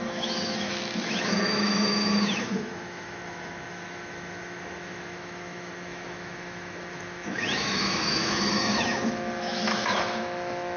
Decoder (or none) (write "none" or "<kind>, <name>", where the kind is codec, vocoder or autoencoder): autoencoder, DAC-VAE